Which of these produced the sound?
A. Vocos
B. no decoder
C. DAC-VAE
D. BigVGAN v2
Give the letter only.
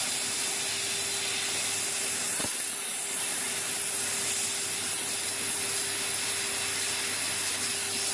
B